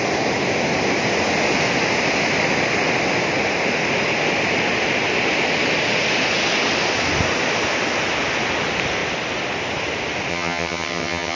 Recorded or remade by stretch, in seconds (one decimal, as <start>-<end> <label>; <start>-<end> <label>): 0.0-10.3 recorded; 10.3-11.4 remade